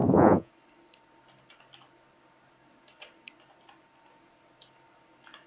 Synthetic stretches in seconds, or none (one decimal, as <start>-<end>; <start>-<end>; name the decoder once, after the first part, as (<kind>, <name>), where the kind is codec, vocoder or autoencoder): 0.0-0.5 (vocoder, Vocos)